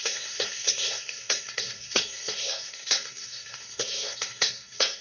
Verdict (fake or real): fake